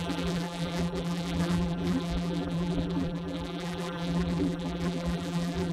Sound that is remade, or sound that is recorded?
remade